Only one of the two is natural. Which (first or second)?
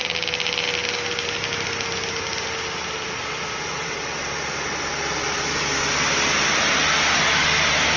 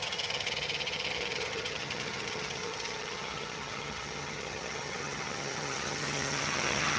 first